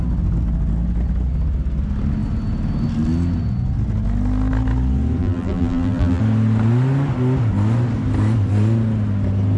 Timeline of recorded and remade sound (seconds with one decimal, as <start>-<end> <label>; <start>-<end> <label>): 0.0-5.2 recorded; 5.2-6.2 remade; 6.2-9.6 recorded